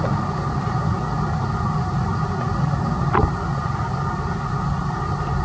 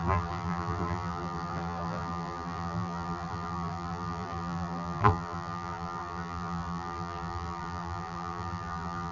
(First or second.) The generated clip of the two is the second